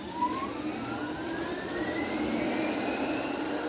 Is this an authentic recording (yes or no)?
yes